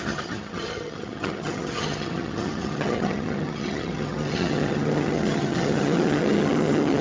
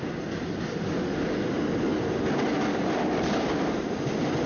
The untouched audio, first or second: second